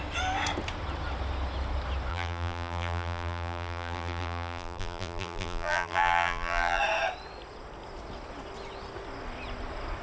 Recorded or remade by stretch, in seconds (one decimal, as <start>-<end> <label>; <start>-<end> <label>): 0.0-2.1 recorded; 2.1-6.8 remade; 6.8-10.0 recorded